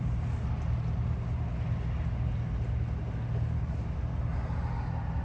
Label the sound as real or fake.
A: real